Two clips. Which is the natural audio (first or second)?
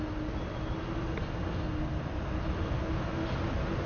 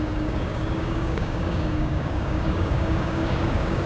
first